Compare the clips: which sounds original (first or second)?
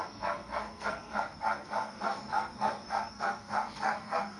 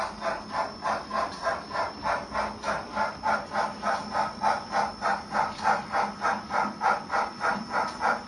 second